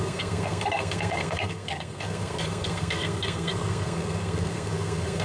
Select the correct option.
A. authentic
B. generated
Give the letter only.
B